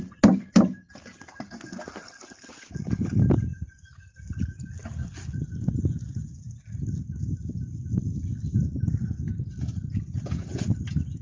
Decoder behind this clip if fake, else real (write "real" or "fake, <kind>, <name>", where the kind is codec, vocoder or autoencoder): real